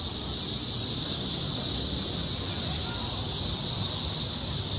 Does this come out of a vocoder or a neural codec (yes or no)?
no